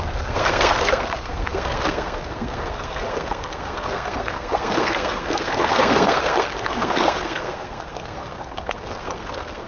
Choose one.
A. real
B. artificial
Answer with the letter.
B